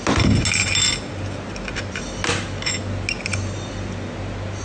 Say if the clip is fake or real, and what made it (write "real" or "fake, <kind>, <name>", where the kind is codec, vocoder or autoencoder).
real